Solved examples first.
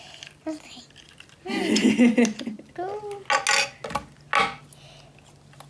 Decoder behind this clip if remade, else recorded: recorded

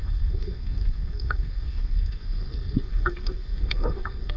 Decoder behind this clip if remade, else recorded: remade, codec, SNAC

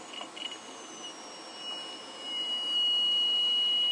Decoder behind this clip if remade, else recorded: recorded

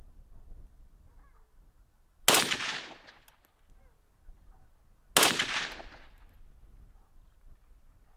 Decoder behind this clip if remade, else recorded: recorded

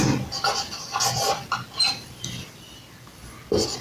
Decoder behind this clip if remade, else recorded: recorded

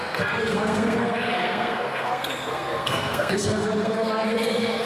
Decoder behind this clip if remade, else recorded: remade, codec, SNAC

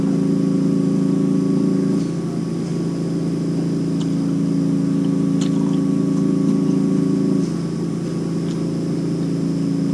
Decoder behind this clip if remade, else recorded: recorded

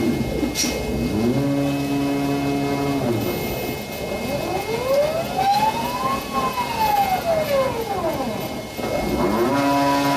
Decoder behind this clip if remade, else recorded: recorded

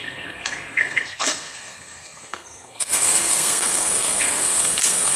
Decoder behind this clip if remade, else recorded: remade, codec, SNAC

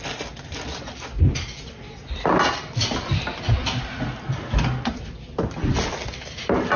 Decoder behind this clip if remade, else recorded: recorded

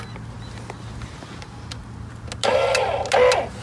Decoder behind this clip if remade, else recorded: recorded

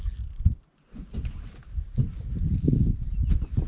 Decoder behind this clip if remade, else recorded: recorded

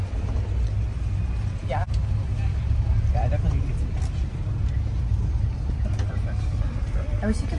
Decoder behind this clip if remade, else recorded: recorded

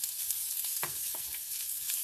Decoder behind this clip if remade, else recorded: remade, codec, SNAC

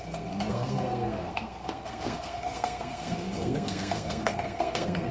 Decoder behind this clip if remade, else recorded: remade, codec, SNAC